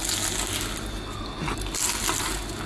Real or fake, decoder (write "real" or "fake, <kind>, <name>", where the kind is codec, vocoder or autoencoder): real